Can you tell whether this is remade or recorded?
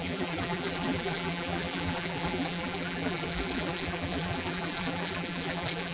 remade